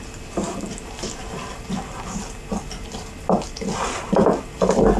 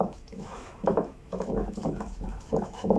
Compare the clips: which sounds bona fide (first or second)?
first